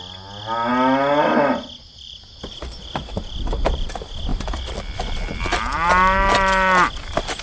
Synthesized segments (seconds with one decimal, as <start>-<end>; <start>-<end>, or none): 1.9-3.9